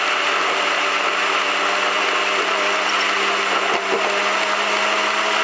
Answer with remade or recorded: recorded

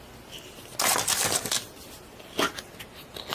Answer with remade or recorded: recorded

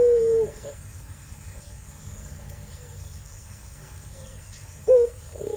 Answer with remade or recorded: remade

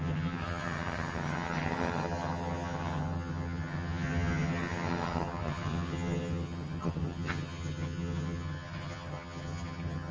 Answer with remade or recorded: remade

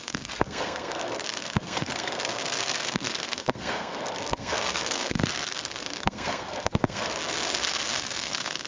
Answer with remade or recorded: remade